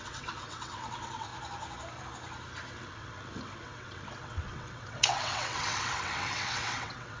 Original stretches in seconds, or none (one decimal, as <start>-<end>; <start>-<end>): 1.3-2.7